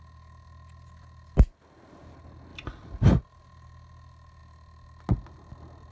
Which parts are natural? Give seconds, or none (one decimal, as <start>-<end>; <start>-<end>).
0.0-2.5; 3.1-5.9